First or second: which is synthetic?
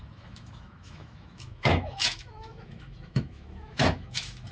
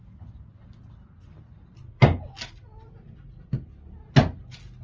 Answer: first